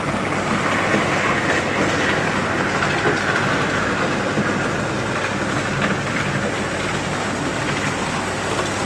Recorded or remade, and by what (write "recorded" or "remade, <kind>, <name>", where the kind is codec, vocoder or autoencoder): recorded